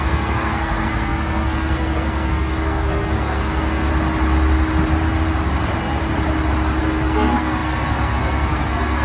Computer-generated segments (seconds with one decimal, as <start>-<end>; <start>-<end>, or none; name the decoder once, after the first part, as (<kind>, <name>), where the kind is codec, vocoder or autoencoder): 0.0-3.9 (codec, SNAC); 6.8-9.0